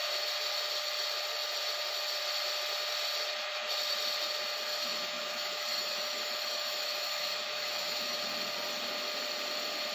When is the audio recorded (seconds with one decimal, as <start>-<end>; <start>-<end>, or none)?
0.0-4.7; 8.2-9.9